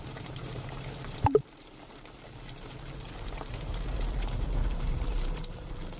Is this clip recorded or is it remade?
remade